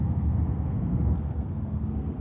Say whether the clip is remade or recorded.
remade